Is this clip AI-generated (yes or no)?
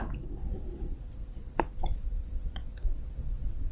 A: no